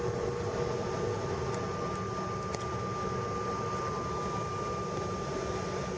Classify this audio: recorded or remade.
recorded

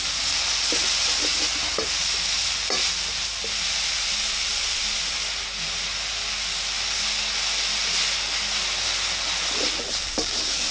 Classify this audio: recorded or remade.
recorded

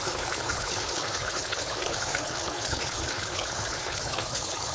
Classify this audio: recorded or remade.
remade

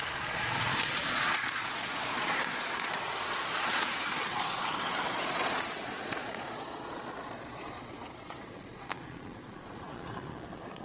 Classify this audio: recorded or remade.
remade